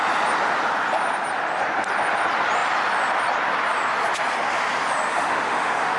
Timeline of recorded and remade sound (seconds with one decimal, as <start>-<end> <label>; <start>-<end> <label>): 0.0-5.1 recorded; 5.1-6.0 remade